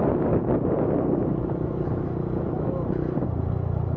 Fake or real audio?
real